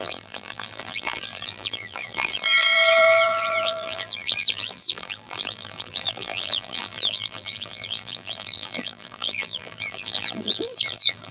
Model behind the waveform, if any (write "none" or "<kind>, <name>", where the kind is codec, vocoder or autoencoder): vocoder, BigVGAN v2